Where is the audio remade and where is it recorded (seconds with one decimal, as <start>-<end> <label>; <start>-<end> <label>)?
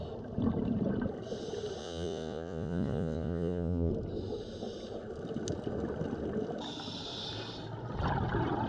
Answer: 0.0-1.8 recorded; 1.8-3.9 remade; 3.9-8.7 recorded